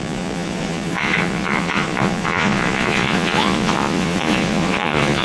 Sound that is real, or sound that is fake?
fake